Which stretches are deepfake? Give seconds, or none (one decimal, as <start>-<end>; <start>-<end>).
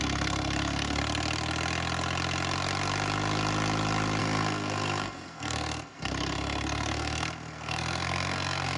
0.0-1.0; 4.2-8.8